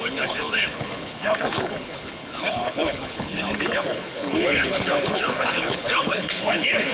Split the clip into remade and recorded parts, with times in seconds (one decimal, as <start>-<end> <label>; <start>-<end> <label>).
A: 0.0-6.9 remade

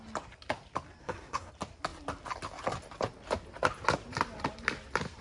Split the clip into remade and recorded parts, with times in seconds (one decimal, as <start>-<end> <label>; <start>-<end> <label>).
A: 0.0-1.0 recorded; 1.0-1.5 remade; 1.5-5.2 recorded